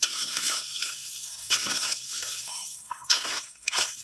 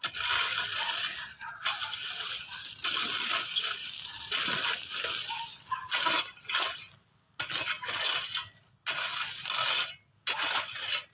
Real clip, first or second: second